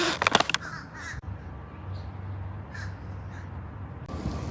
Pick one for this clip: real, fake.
real